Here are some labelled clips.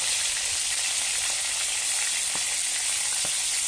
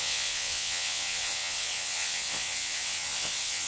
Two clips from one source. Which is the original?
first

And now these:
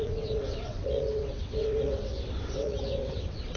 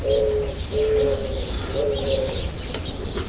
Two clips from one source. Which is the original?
second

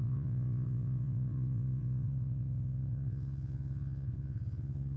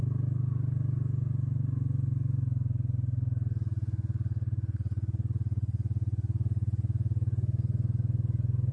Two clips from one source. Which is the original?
second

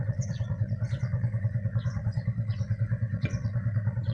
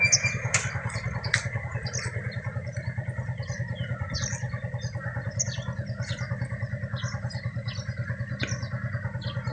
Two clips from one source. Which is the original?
second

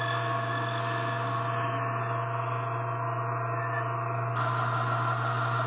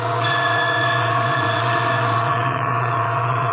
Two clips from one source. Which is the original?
first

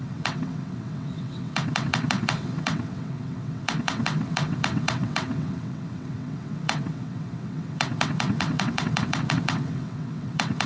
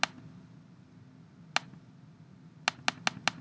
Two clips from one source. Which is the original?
second